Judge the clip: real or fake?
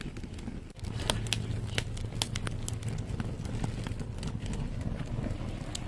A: real